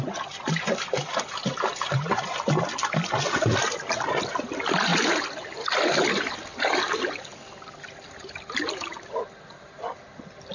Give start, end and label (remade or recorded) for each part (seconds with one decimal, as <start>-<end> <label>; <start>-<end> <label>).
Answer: 0.0-10.5 recorded